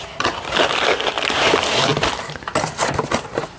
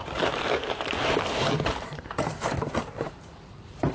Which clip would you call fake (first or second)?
second